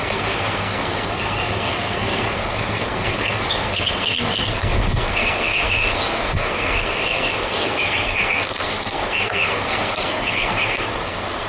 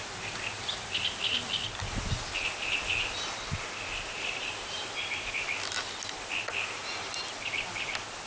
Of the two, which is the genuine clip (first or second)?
second